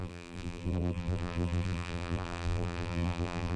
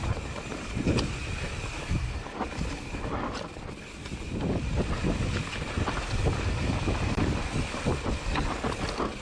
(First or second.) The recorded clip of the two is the second